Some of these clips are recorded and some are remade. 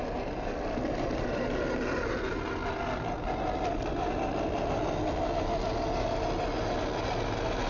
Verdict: recorded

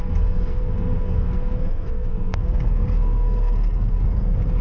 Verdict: remade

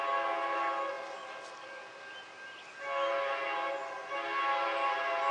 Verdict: recorded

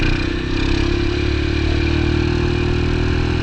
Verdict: recorded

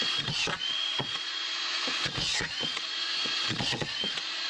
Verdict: remade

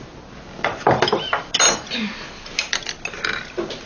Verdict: recorded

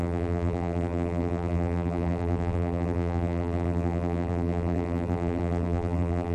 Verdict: remade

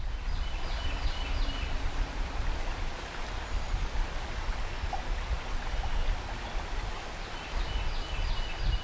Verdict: recorded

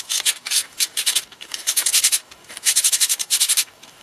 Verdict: remade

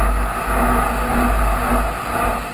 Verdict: recorded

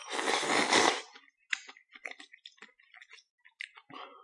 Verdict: recorded